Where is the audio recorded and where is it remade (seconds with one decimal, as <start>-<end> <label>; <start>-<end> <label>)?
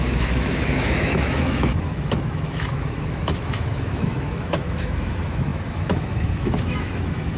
0.0-7.4 remade